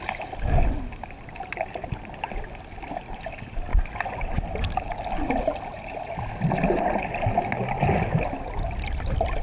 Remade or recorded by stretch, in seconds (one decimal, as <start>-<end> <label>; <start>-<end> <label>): 0.0-9.4 recorded